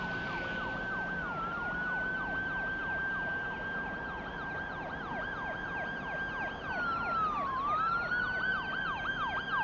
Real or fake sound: real